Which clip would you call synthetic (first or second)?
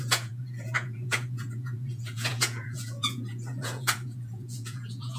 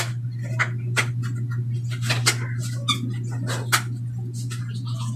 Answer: first